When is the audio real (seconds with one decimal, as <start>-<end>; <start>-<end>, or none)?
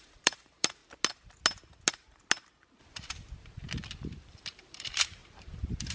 0.8-4.3; 5.2-5.9